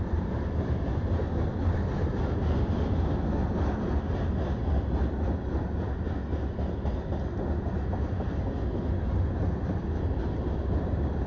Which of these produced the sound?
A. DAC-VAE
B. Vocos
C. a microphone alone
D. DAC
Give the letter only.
C